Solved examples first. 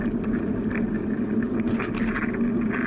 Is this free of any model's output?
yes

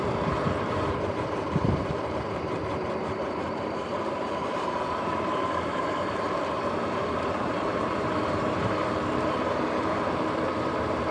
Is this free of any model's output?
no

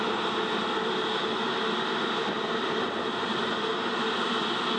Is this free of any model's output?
no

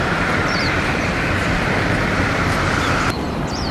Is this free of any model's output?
no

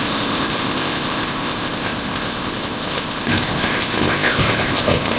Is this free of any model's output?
no